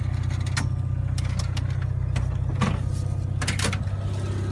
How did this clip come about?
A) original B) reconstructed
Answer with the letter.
A